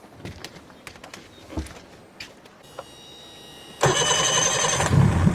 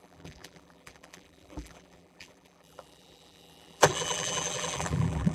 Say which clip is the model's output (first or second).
second